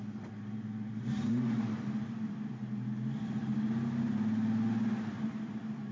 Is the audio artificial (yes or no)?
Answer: no